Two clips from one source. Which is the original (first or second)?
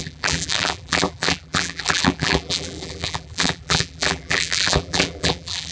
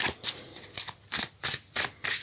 second